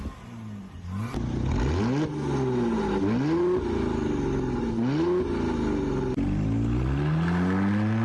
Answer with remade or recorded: recorded